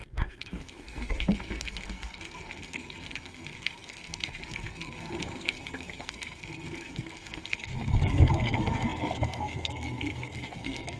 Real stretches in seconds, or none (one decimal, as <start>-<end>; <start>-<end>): none